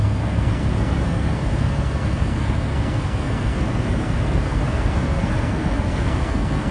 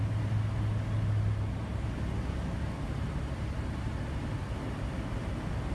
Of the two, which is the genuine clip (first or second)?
second